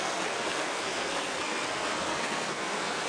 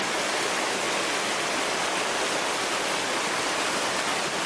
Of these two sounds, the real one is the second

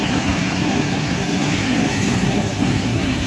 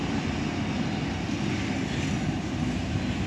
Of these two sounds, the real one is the second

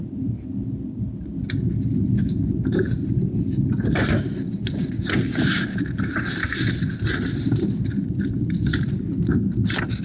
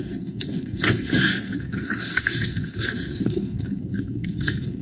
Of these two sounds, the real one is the first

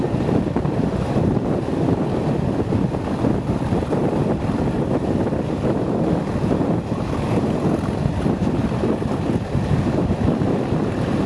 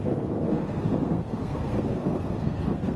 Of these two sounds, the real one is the first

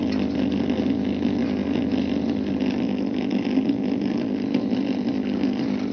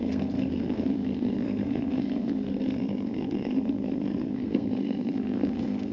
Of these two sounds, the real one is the first